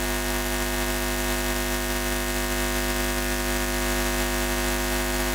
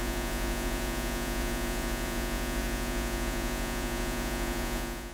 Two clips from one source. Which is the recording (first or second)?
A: first